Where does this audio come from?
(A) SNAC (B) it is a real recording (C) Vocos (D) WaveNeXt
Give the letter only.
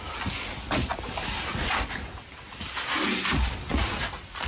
B